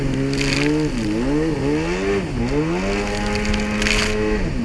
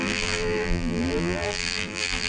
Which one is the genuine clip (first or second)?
first